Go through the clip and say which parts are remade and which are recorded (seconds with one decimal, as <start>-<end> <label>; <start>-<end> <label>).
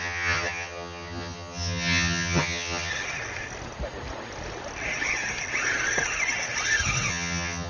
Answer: 0.0-2.9 remade; 2.9-7.1 recorded; 7.1-7.7 remade